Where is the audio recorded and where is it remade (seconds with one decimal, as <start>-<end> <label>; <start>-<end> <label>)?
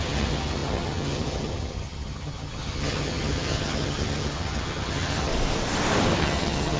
0.0-5.3 remade; 5.3-6.2 recorded; 6.2-6.8 remade